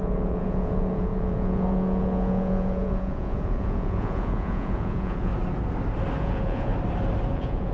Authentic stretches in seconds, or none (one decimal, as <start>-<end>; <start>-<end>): 5.3-6.2; 6.7-7.3